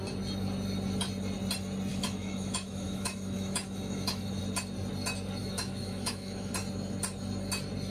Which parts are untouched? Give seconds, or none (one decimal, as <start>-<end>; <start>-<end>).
0.0-1.9; 4.4-5.4; 6.5-7.9